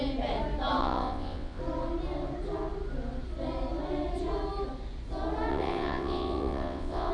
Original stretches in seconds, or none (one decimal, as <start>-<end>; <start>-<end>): 0.0-0.8; 1.6-5.5